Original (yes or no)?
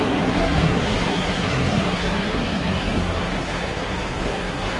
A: no